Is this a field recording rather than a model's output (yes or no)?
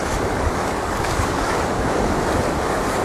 no